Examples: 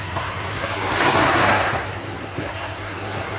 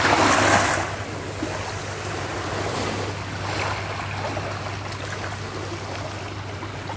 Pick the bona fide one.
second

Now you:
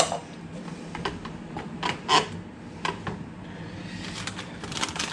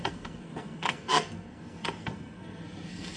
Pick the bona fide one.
first